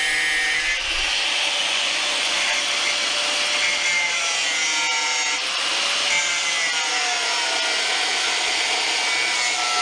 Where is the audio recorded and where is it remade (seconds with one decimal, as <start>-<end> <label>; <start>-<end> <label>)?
0.0-1.6 recorded; 1.6-2.6 remade; 2.6-9.8 recorded